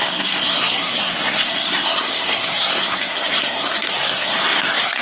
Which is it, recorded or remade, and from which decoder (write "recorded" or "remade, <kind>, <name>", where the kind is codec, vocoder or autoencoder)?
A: remade, codec, SNAC